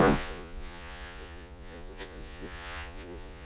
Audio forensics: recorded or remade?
remade